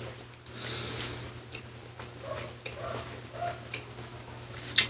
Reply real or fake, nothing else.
real